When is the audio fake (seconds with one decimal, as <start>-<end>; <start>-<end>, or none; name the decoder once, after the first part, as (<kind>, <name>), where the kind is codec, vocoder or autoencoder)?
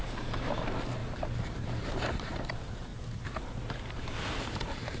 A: 0.0-2.9 (vocoder, BigVGAN v2); 3.7-5.0